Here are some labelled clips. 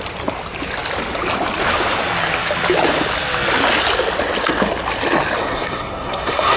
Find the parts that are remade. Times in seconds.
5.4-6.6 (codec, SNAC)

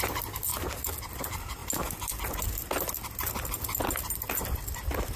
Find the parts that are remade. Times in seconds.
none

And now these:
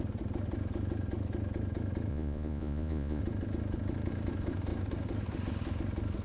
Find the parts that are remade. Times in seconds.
2.1-3.2 (vocoder, Vocos)